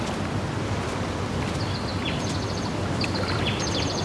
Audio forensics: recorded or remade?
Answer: recorded